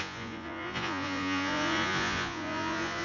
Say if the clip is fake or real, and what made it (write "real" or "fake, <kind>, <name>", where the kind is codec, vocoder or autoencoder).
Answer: fake, vocoder, Vocos